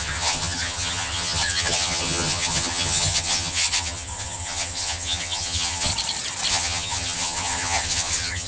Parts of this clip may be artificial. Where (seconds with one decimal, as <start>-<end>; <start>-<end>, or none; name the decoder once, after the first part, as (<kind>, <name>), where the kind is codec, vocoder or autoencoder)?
0.0-5.9 (vocoder, HiFi-GAN); 6.5-8.5